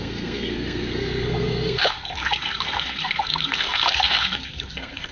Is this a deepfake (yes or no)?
yes